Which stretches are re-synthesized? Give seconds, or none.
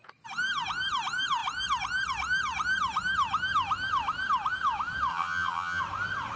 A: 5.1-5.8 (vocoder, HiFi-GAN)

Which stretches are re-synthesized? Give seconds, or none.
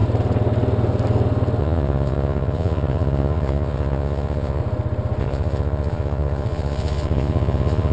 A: 1.6-4.6 (vocoder, Vocos); 5.2-7.9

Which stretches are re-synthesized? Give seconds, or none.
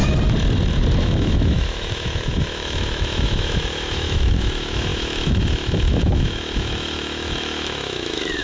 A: 1.0-8.4 (autoencoder, DAC-VAE)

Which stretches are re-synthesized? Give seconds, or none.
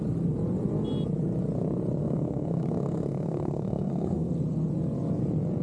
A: 2.0-4.3 (codec, SNAC)